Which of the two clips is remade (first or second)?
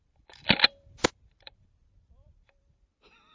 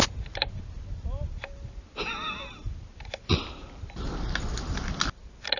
first